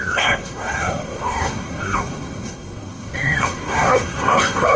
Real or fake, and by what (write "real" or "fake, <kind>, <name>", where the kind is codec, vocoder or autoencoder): fake, codec, SNAC